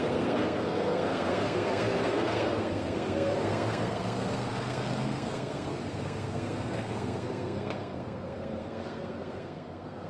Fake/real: fake